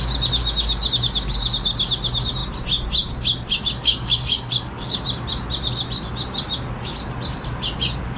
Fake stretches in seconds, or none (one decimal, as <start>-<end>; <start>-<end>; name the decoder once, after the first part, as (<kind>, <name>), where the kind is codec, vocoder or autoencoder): 3.8-5.0 (codec, DAC)